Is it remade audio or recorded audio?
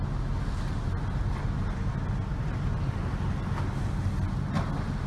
recorded